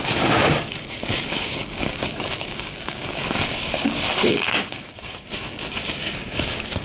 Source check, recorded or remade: remade